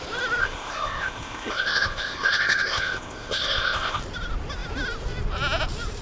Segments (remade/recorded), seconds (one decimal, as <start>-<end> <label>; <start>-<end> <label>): 0.0-0.4 recorded; 0.4-4.0 remade; 4.0-6.0 recorded